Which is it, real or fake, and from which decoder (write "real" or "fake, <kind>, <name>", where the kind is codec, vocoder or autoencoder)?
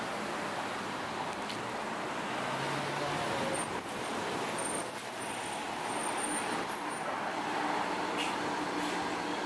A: real